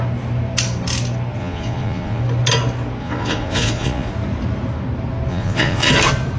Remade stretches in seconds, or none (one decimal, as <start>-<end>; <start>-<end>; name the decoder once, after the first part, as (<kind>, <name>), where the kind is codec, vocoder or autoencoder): 1.4-2.2 (vocoder, Vocos); 3.0-4.1; 5.3-5.9